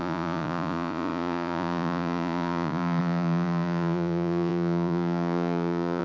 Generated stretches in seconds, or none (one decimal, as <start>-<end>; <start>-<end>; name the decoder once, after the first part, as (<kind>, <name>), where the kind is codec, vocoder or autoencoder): 0.0-6.0 (vocoder, Vocos)